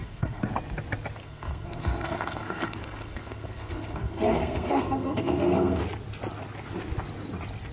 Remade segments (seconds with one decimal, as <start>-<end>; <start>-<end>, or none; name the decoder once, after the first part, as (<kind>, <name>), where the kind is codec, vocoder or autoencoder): 0.0-0.5 (codec, SNAC); 1.2-5.8

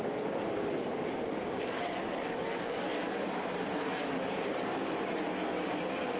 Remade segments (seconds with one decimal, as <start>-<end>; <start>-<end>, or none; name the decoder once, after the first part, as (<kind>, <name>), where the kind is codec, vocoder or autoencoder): 0.9-1.7 (vocoder, BigVGAN v2); 2.9-3.7

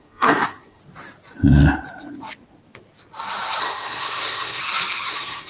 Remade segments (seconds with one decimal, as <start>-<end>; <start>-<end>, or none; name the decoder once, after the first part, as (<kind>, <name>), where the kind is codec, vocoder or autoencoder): 0.0-0.8 (codec, SNAC); 3.6-4.6; 5.1-5.5